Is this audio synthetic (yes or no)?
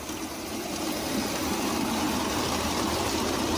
no